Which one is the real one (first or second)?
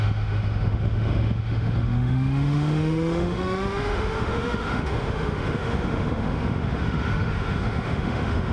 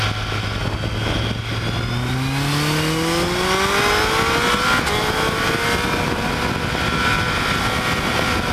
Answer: second